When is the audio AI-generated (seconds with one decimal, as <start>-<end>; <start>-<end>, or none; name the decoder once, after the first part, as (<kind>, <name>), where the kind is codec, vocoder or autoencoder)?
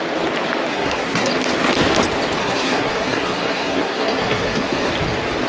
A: 0.7-1.3 (codec, SNAC); 2.4-4.9